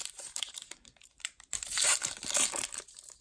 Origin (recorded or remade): remade